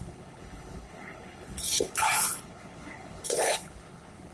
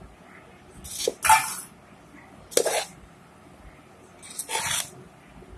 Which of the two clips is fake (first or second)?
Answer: first